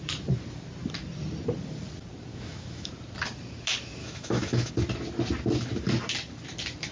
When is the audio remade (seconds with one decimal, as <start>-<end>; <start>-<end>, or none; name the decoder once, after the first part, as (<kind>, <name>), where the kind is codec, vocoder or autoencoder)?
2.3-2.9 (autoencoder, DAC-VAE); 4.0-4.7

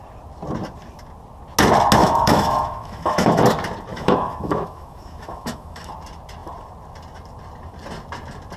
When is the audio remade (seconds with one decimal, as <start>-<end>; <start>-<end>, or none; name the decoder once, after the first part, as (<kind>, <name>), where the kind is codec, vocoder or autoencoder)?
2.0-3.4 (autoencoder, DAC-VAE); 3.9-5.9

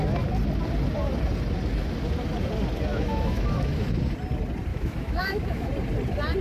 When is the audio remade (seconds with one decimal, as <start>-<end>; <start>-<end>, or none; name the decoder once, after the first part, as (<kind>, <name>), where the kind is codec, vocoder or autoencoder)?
2.9-3.9 (autoencoder, DAC-VAE); 4.7-5.7

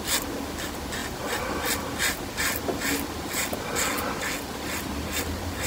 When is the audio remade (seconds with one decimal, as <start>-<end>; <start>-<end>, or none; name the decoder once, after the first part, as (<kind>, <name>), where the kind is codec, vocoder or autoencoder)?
none